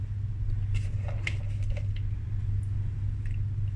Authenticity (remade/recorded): recorded